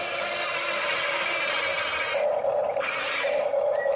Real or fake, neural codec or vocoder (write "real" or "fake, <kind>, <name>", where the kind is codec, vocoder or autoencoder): real